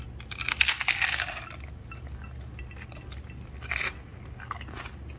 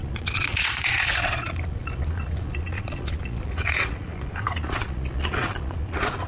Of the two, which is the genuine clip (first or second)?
first